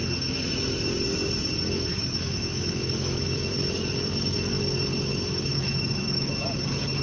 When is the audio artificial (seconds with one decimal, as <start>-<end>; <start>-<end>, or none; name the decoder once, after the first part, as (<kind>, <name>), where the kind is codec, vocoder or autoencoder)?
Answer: 1.9-3.5 (autoencoder, DAC-VAE); 5.1-6.3